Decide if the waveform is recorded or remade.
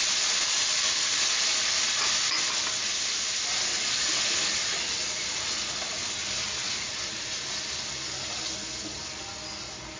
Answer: recorded